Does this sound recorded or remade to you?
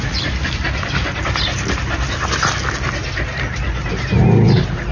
recorded